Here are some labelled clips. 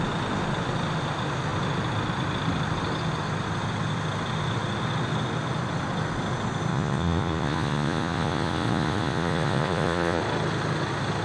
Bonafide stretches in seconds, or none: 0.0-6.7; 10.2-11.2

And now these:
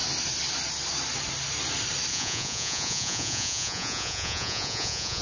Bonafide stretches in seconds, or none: 0.0-2.1

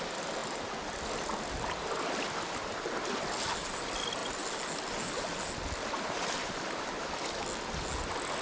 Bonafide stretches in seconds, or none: 0.0-8.4

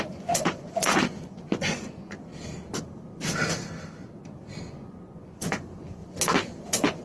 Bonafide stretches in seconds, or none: 2.3-4.7; 6.0-6.6

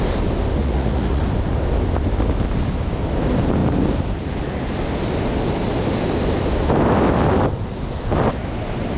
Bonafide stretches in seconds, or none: 0.0-0.6; 1.2-9.0

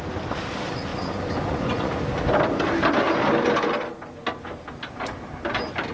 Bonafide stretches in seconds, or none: 0.0-0.9; 1.9-5.9

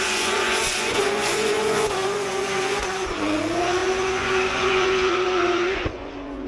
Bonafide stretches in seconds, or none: none